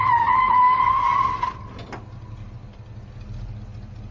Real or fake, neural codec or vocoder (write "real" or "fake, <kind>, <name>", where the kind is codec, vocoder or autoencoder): real